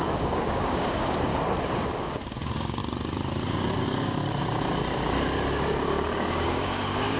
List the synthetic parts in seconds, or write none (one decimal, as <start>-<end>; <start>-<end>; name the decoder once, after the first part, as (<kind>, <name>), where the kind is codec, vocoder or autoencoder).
0.0-1.3 (codec, DAC); 2.0-2.8; 3.8-4.2; 5.8-7.2